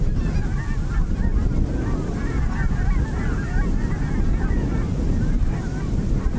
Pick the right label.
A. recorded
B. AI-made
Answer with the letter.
A